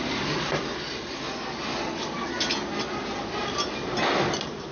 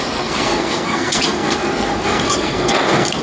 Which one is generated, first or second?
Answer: second